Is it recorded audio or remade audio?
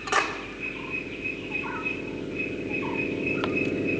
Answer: recorded